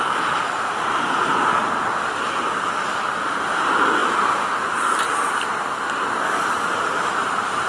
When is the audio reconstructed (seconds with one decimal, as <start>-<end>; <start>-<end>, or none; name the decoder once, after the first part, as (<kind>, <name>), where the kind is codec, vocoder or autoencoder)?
none